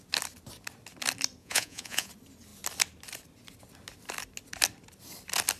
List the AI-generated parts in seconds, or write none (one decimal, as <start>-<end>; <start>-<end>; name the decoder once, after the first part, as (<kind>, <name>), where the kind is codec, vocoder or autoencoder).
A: 1.4-2.1 (vocoder, Vocos)